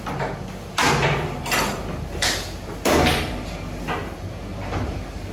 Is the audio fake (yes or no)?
no